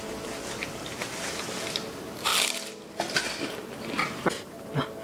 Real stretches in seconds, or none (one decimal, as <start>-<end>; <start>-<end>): 2.3-3.8